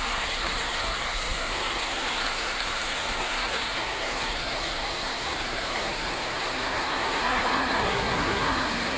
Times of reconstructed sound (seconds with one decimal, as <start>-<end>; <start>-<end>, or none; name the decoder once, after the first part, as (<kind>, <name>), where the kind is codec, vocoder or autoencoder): 0.0-9.0 (codec, SNAC)

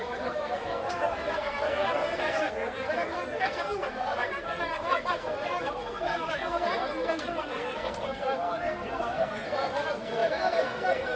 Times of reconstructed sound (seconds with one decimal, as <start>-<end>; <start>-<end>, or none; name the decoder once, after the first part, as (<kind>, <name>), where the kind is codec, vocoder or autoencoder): 0.0-11.2 (codec, SNAC)

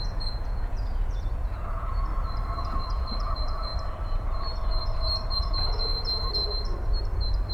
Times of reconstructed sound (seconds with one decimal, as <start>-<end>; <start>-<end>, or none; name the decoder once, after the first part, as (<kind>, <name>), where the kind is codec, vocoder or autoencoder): 0.0-2.1 (vocoder, Vocos); 2.8-3.7; 5.4-5.9

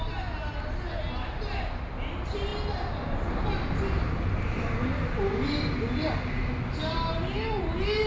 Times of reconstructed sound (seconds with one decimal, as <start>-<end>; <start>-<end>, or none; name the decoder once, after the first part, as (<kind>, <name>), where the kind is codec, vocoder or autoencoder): none

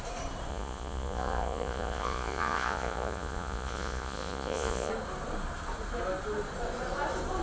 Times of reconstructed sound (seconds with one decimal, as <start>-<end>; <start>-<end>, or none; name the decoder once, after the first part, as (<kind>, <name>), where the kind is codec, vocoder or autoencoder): 0.5-4.9 (vocoder, Vocos)

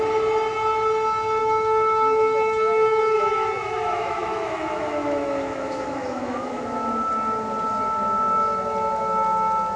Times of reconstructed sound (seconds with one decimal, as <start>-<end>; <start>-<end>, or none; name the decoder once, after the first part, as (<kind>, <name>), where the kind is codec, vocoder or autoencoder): 1.4-6.6 (autoencoder, DAC-VAE)